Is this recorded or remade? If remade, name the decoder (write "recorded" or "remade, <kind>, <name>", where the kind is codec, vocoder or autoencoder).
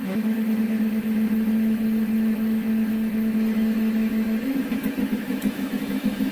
remade, autoencoder, DAC-VAE